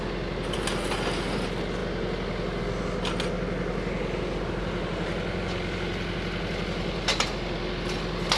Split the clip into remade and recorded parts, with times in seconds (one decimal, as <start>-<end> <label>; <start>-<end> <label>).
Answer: 0.0-8.4 recorded